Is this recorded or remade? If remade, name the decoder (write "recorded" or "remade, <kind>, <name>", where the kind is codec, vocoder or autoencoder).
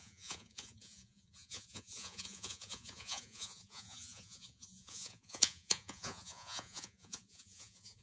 remade, vocoder, Vocos